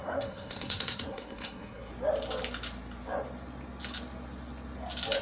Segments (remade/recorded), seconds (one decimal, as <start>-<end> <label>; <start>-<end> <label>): 0.0-1.9 remade; 1.9-5.2 recorded